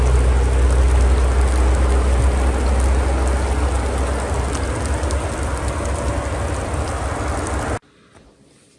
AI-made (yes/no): no